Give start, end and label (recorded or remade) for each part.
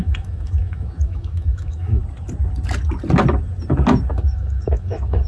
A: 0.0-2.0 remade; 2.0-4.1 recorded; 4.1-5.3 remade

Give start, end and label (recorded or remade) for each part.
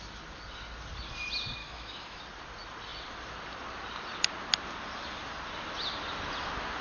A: 0.0-1.6 recorded; 1.6-2.2 remade; 2.2-6.8 recorded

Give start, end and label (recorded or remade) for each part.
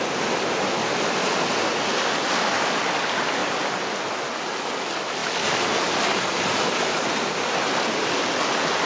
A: 0.0-8.9 recorded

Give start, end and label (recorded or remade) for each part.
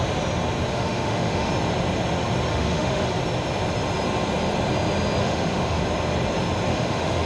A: 0.0-0.7 recorded; 0.7-1.5 remade; 1.5-2.5 recorded; 2.5-3.1 remade; 3.1-5.2 recorded; 5.2-5.8 remade; 5.8-6.7 recorded; 6.7-7.3 remade